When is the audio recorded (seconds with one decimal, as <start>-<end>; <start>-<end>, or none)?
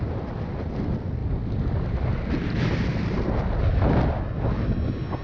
0.0-5.2